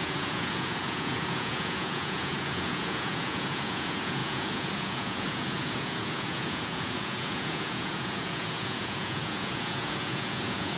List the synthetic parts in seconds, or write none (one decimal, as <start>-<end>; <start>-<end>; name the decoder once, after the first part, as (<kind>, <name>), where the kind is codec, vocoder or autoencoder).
0.0-10.8 (vocoder, Vocos)